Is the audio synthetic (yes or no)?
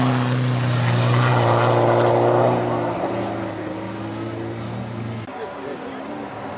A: no